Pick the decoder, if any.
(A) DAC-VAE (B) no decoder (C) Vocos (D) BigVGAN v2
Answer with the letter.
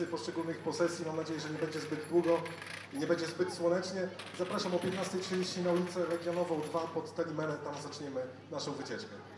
B